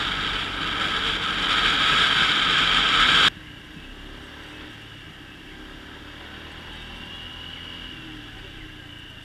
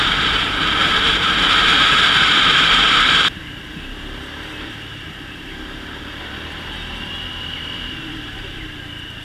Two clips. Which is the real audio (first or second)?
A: first